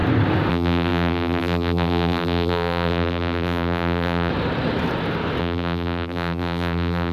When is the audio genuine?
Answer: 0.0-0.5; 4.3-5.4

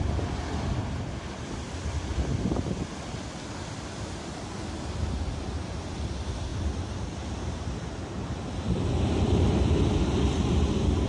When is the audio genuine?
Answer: none

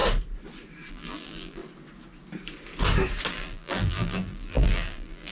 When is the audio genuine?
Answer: 0.0-0.9; 1.6-3.3

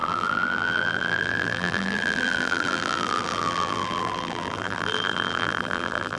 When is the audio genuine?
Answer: none